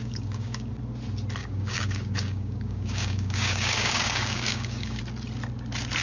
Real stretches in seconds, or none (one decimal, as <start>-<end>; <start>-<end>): 0.7-1.4; 5.0-6.0